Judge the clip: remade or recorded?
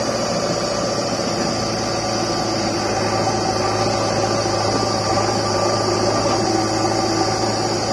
recorded